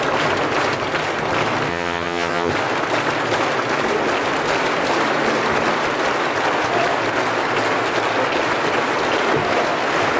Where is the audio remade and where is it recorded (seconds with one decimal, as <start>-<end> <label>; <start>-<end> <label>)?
0.0-1.7 recorded; 1.7-2.5 remade; 2.5-10.2 recorded